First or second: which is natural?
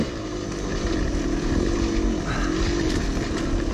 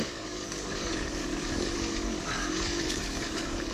first